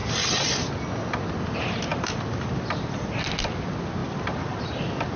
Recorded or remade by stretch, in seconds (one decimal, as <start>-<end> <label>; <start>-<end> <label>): 0.0-1.9 recorded; 1.9-3.2 remade; 3.2-4.0 recorded; 4.0-4.6 remade; 4.6-5.2 recorded